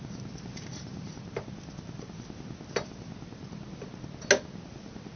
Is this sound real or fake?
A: real